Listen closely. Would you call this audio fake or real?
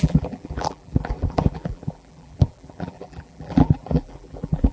fake